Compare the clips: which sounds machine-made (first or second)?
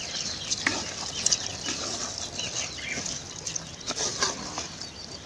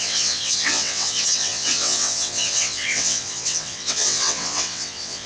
second